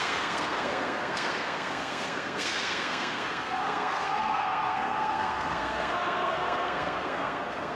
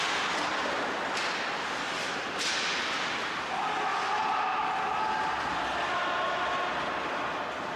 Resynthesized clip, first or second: first